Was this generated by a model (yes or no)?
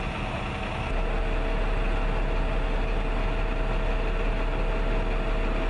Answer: no